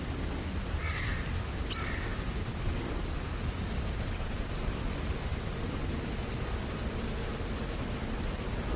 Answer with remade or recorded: recorded